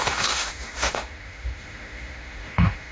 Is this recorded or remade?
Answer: remade